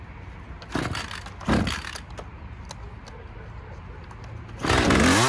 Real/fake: real